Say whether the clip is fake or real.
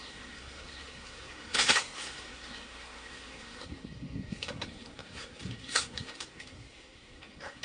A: fake